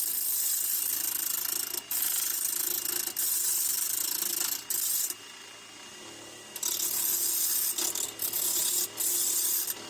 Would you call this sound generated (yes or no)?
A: no